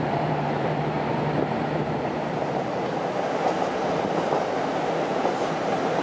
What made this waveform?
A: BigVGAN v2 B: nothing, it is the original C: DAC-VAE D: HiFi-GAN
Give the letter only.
A